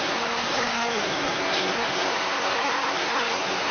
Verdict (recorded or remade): remade